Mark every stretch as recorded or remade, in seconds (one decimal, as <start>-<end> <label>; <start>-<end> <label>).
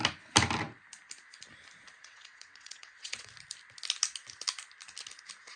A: 0.0-2.0 recorded; 2.0-3.3 remade; 3.3-5.6 recorded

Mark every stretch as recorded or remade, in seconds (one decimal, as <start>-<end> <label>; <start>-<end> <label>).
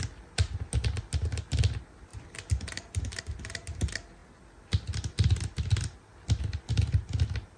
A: 0.0-7.6 recorded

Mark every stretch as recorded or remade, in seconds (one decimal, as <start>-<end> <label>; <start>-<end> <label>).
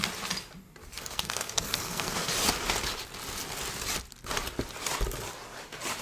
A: 0.0-0.9 recorded; 0.9-2.3 remade; 2.3-6.0 recorded